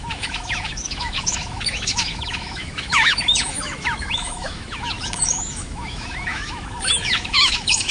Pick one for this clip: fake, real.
fake